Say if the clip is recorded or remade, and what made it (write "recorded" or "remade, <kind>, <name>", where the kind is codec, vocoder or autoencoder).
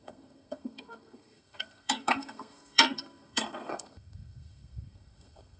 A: remade, codec, SNAC